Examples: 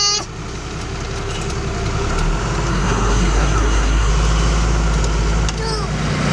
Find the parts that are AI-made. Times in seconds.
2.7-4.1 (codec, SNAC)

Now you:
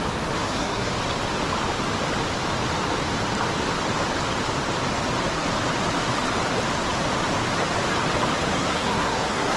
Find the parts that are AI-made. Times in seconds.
0.4-0.9 (codec, SNAC); 8.5-9.6

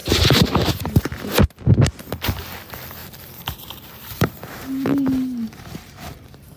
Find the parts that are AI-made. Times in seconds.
0.0-0.7 (vocoder, BigVGAN v2); 3.0-6.6

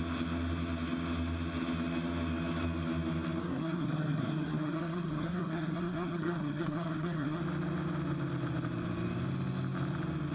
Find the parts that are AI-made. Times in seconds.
3.4-7.4 (codec, SNAC)